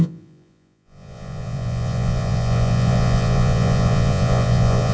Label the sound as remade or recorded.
remade